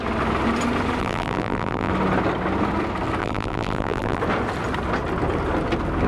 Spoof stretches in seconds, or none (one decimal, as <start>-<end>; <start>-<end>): 1.0-1.9; 3.2-4.2